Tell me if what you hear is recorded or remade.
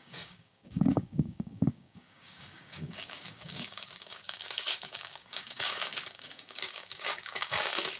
remade